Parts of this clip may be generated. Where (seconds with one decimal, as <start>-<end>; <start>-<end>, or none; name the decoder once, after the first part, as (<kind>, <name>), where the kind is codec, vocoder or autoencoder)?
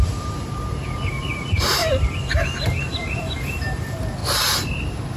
0.0-1.8 (vocoder, BigVGAN v2); 2.8-4.2; 4.7-5.2